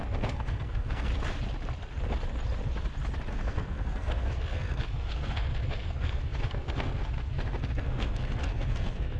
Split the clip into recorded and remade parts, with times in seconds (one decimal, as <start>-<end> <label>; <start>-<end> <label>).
0.0-1.1 remade; 1.1-3.3 recorded; 3.3-9.2 remade